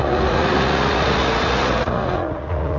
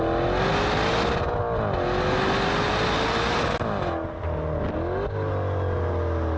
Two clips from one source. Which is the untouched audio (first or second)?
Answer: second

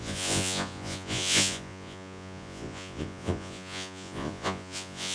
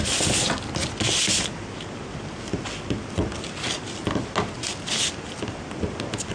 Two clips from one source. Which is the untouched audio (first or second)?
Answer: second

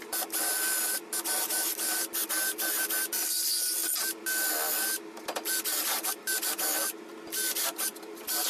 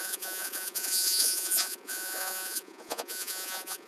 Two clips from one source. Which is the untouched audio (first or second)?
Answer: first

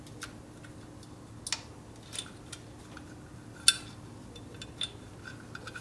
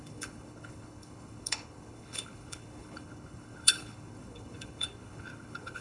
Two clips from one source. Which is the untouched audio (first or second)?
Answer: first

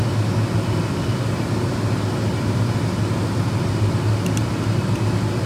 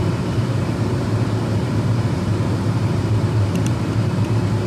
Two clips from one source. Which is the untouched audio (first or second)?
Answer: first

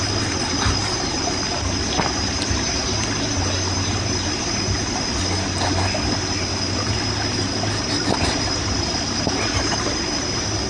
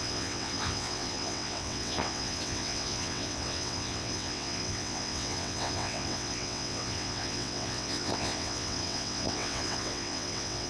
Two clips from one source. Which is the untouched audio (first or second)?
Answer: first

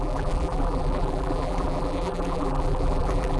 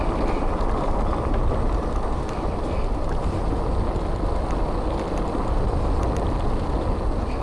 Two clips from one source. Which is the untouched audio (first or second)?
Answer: second